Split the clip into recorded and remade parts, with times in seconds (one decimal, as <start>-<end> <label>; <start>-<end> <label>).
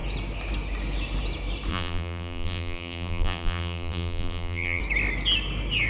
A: 0.0-1.7 recorded; 1.7-4.8 remade; 4.8-5.9 recorded